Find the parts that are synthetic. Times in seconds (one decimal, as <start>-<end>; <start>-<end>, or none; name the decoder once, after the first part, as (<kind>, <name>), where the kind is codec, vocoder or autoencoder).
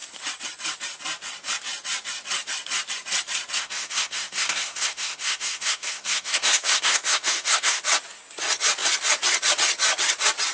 3.6-7.8 (codec, SNAC)